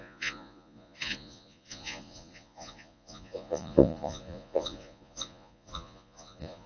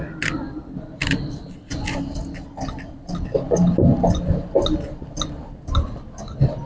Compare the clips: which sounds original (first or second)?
second